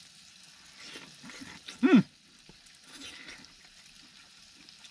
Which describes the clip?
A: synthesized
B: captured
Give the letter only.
B